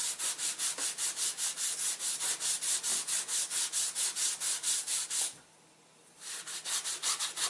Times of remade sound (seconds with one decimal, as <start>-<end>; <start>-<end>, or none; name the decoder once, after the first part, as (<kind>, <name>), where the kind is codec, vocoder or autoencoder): none